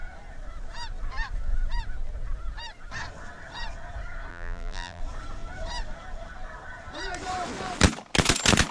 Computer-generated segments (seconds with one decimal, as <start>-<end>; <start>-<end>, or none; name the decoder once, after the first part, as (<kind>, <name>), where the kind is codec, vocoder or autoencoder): 4.3-5.0 (vocoder, BigVGAN v2)